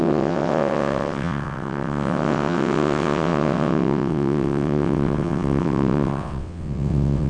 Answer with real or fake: fake